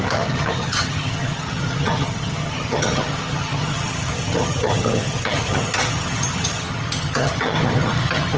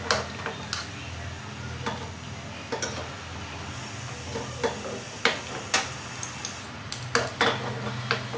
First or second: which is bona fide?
second